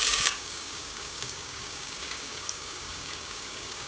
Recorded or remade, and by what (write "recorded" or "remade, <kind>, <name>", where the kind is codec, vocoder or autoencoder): remade, codec, DAC